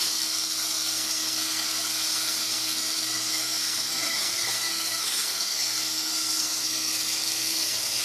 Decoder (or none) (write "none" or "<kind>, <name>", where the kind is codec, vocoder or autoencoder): codec, SNAC